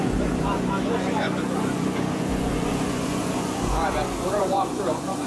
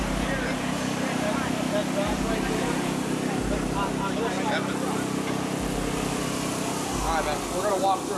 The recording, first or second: second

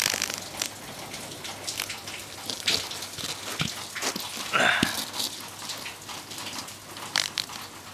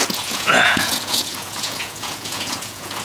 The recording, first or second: first